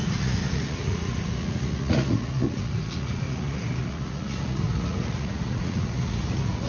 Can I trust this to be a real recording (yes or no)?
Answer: no